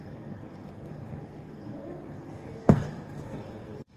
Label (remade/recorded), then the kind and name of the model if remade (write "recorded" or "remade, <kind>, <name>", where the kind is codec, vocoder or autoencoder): remade, codec, SNAC